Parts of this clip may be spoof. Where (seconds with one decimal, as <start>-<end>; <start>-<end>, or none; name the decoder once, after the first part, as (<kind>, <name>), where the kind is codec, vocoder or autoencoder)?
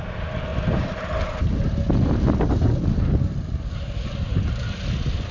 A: 0.5-1.6 (vocoder, BigVGAN v2)